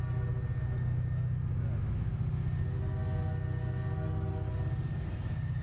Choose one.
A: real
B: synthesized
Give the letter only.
A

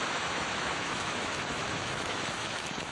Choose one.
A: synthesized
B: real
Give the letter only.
A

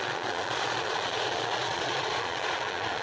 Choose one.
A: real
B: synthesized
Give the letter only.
B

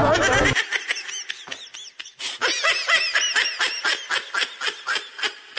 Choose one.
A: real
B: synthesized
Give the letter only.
A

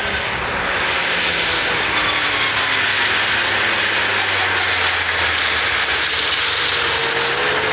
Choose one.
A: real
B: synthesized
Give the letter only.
A